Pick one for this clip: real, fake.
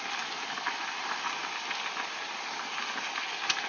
real